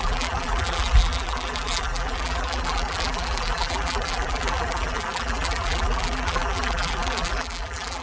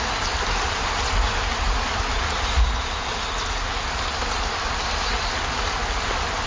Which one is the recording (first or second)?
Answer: second